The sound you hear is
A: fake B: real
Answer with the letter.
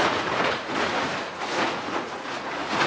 A